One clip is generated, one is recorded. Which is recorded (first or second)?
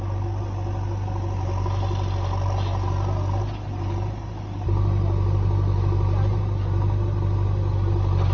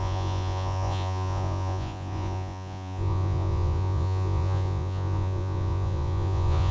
first